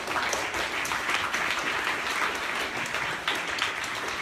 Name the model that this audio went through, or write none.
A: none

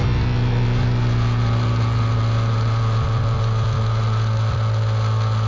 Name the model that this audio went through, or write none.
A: none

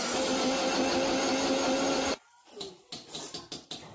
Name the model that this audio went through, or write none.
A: none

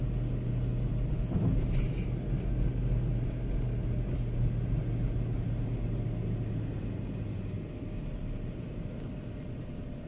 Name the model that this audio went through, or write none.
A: none